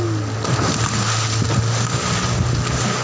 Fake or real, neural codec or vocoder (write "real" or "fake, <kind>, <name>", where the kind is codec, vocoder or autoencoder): real